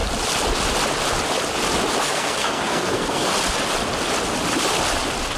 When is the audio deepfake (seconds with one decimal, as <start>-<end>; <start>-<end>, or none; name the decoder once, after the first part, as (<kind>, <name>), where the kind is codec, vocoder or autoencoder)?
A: 2.0-3.3 (codec, SNAC)